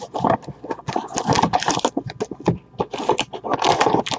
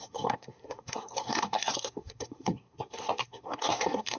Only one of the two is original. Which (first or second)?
first